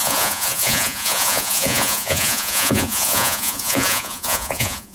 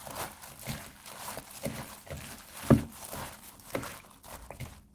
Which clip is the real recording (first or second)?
second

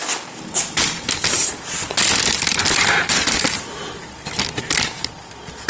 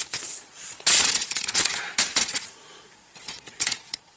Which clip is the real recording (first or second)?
first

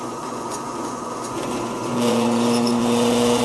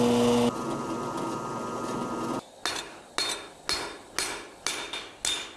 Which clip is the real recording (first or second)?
second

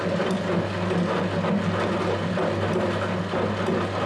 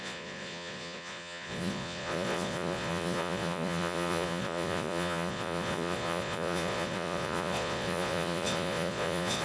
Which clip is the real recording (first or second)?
first